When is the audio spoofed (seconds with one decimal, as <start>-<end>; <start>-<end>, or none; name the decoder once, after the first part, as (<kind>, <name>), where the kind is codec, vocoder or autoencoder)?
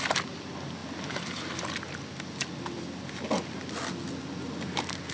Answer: none